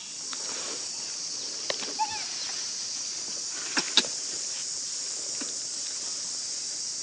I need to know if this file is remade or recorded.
recorded